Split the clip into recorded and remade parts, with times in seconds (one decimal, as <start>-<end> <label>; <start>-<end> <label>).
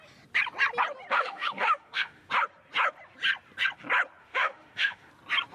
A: 0.0-1.1 recorded; 1.1-2.3 remade; 2.3-4.2 recorded; 4.2-5.1 remade; 5.1-5.5 recorded